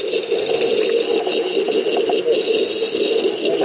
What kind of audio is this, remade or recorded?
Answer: recorded